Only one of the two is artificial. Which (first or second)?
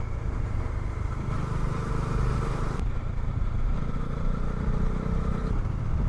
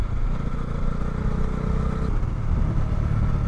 first